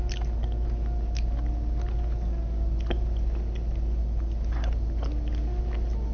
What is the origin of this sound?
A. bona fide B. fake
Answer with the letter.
A